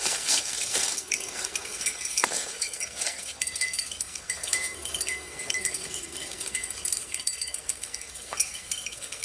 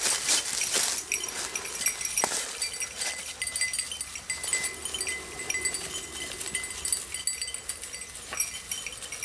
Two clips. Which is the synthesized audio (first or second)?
first